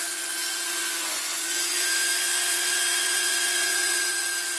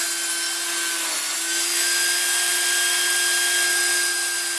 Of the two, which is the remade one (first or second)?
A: first